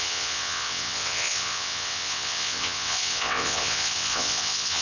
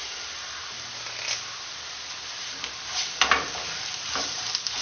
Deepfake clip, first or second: first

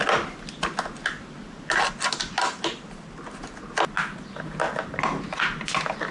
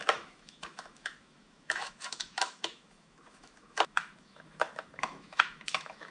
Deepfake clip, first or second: second